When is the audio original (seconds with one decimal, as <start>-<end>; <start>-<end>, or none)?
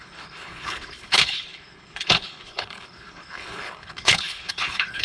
none